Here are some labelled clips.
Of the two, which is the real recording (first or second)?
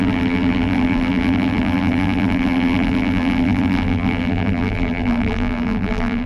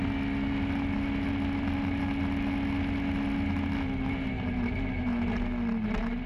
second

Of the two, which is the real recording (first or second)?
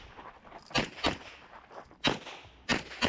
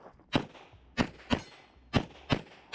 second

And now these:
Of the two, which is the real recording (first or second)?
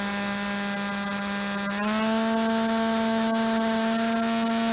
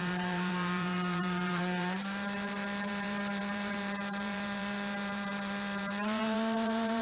first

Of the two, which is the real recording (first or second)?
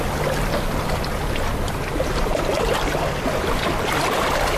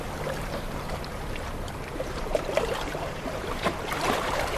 first